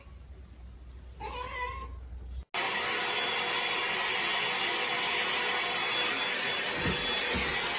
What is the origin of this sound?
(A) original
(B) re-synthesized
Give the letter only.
A